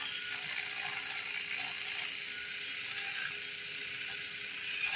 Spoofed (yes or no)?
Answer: no